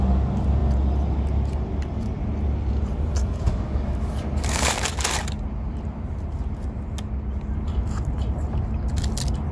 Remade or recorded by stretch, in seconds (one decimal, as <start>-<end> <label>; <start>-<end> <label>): 0.0-3.2 recorded; 3.2-4.9 remade; 4.9-9.5 recorded